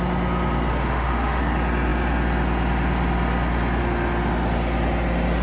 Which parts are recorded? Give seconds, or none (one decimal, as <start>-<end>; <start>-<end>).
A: 0.0-0.7; 1.4-5.4